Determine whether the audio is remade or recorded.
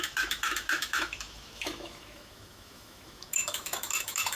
remade